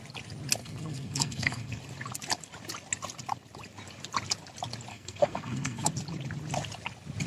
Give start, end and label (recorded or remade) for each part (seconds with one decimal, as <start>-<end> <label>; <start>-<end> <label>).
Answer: 0.0-0.6 recorded; 0.6-1.8 remade; 1.8-4.9 recorded; 4.9-5.9 remade; 5.9-7.3 recorded